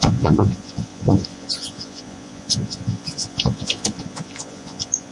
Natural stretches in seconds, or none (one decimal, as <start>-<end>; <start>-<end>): none